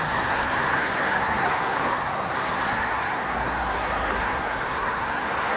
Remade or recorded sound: remade